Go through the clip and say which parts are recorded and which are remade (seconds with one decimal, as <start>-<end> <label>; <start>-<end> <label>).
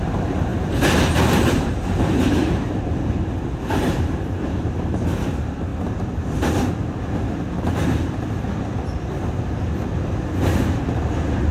0.0-0.5 remade; 0.5-1.6 recorded; 1.6-5.7 remade; 5.7-10.4 recorded; 10.4-11.5 remade